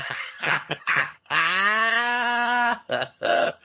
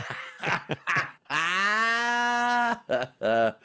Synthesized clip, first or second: first